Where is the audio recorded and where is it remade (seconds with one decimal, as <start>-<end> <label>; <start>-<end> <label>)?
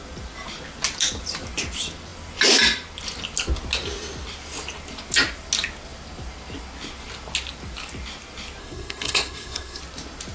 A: 0.0-8.6 recorded; 8.6-9.8 remade; 9.8-10.3 recorded